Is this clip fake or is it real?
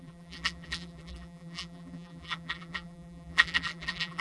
fake